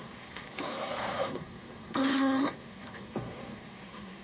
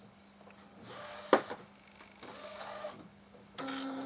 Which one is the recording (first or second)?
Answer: second